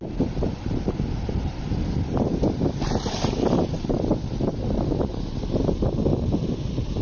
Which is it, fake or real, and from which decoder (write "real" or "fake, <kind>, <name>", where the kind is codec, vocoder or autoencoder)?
real